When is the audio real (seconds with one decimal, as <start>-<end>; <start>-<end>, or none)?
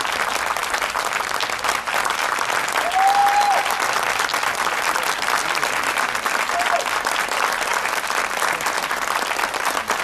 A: 0.0-10.0